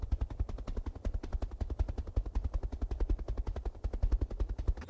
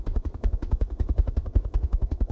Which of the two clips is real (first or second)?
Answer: first